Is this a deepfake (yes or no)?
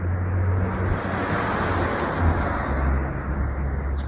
no